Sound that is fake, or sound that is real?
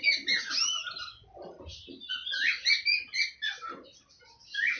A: real